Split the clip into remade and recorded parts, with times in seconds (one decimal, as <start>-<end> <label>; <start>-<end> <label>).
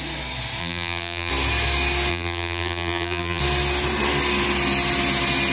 0.0-0.6 recorded; 0.6-1.3 remade; 1.3-2.1 recorded; 2.1-3.4 remade; 3.4-5.5 recorded